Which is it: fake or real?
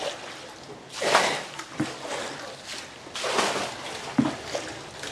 real